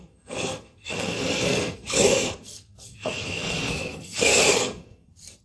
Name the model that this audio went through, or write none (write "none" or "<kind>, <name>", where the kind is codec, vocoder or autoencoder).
codec, SNAC